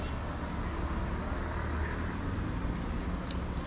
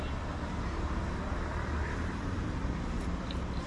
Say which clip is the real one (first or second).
first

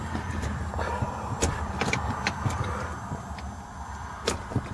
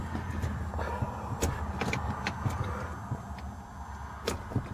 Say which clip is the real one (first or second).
second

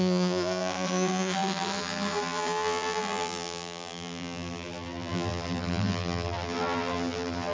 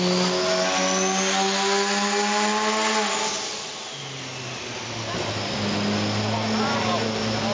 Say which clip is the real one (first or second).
second